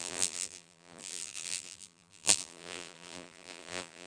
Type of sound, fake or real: fake